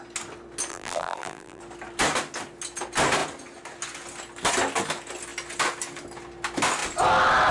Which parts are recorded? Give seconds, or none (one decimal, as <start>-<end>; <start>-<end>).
0.0-0.7; 1.6-7.5

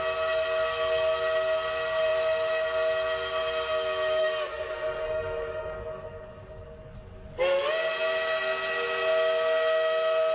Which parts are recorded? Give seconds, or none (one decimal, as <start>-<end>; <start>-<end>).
0.0-4.2; 7.6-10.3

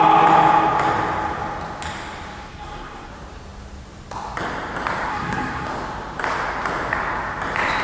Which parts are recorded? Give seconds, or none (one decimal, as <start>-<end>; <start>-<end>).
0.0-2.5; 3.1-5.1; 5.7-7.8